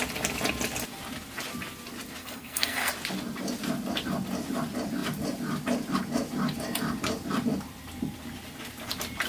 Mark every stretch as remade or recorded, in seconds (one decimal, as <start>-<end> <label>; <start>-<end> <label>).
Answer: 0.0-2.2 recorded; 2.2-2.9 remade; 2.9-9.3 recorded